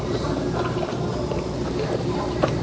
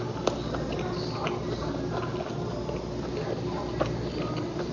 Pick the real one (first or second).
second